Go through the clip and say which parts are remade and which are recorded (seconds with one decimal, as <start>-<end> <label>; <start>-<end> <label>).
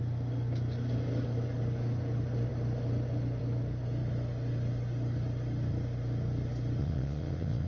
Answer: 0.0-6.8 recorded; 6.8-7.7 remade